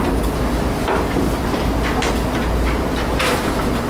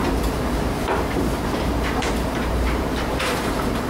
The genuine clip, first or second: first